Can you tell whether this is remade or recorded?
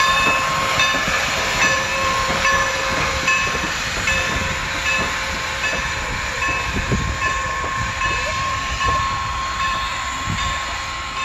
remade